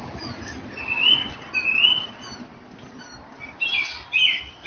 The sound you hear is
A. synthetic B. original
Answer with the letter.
B